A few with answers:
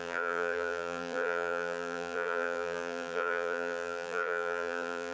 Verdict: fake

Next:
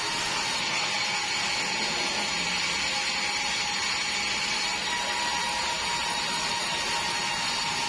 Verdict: real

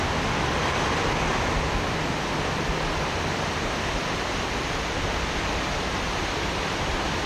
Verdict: real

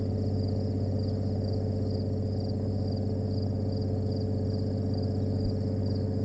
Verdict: real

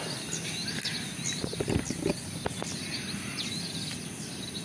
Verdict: real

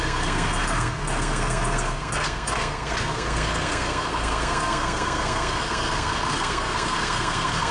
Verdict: fake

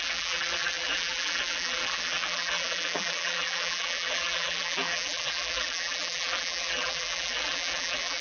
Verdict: fake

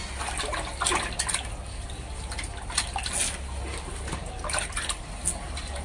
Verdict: real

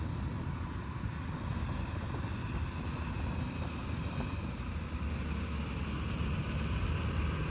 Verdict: real